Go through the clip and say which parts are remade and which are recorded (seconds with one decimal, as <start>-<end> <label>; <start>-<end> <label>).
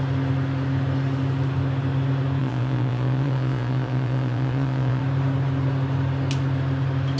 0.0-2.4 recorded; 2.4-5.0 remade; 5.0-7.2 recorded